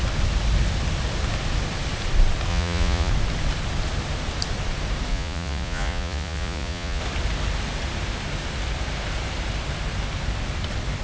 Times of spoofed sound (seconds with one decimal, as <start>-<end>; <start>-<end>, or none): 2.5-3.1; 5.1-7.0